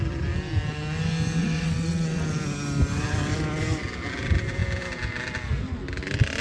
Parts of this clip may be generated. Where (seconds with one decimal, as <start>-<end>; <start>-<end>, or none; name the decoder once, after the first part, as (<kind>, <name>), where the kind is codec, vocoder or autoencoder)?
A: 1.4-2.4 (vocoder, WaveNeXt)